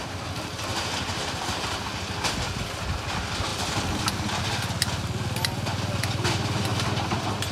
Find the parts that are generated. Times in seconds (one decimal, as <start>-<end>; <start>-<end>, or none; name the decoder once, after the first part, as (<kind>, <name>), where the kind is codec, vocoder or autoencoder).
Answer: 0.7-1.8 (vocoder, BigVGAN v2); 6.7-7.5